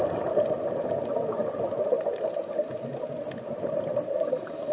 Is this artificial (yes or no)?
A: no